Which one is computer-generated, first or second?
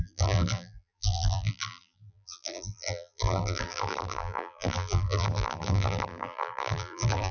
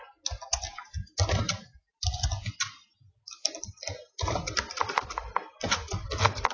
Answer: first